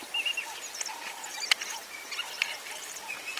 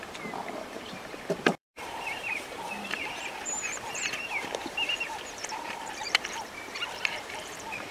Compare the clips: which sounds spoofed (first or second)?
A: second